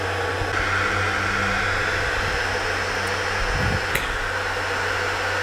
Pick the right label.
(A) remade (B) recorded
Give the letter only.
B